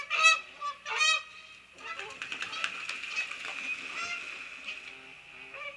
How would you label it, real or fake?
real